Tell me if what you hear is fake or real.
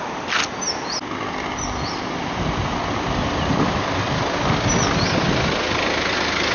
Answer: real